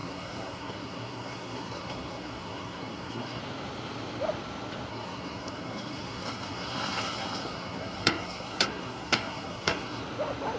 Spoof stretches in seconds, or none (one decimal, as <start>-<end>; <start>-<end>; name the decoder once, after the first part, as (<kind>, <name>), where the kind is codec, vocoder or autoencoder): 0.0-3.4 (codec, SNAC); 4.9-10.0